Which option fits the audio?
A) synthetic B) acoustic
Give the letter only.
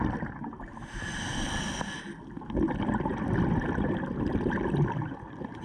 B